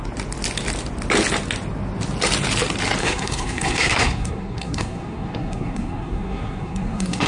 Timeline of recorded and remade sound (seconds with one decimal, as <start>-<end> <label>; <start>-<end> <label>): 0.0-3.0 recorded; 3.0-7.3 remade